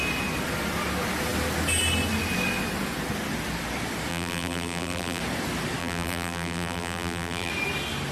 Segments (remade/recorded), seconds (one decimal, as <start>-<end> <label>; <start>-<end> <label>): 0.0-4.1 recorded; 4.1-5.2 remade; 5.2-5.8 recorded; 5.8-7.5 remade; 7.5-8.1 recorded